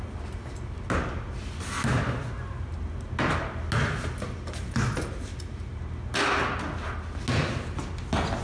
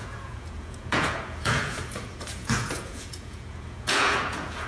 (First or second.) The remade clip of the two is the second